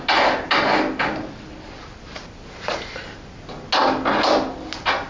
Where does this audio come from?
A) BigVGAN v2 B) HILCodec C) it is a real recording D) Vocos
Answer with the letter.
C